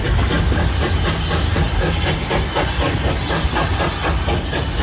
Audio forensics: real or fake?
real